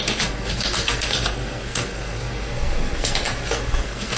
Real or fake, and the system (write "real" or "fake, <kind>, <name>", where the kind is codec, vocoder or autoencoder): fake, codec, SNAC